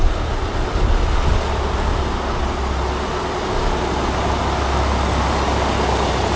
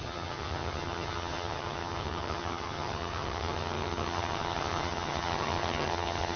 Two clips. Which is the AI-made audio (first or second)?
second